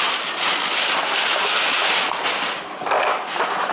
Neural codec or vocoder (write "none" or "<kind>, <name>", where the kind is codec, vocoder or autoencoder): none